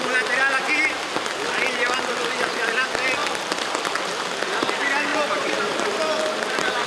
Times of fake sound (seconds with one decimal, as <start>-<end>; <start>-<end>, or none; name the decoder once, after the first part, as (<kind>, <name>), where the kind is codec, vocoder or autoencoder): 3.2-3.8 (vocoder, BigVGAN v2); 5.1-6.0